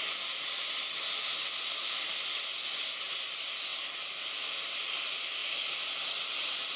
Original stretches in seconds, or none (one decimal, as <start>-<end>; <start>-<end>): 0.0-6.8